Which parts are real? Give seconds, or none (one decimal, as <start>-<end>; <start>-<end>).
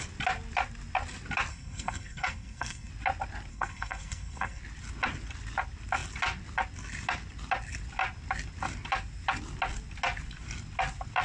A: 0.0-1.5; 2.9-3.5; 4.6-11.2